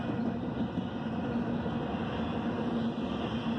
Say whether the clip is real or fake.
real